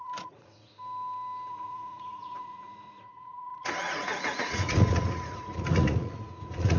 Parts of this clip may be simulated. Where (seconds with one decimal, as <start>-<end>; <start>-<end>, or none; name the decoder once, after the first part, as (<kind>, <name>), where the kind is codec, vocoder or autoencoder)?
0.0-0.7 (vocoder, Vocos); 1.5-6.8